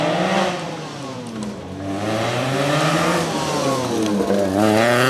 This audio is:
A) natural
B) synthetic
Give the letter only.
A